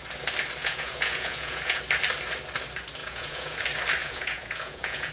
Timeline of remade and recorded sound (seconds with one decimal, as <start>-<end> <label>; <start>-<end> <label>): 0.0-0.6 recorded; 0.6-1.8 remade; 1.8-3.0 recorded; 3.0-3.6 remade; 3.6-4.0 recorded; 4.0-5.1 remade